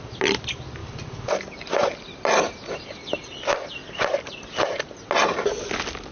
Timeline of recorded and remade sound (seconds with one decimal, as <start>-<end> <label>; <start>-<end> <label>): 0.0-6.1 recorded